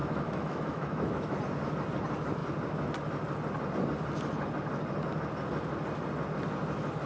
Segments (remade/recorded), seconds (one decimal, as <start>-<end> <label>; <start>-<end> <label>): 0.0-1.4 remade; 1.4-7.1 recorded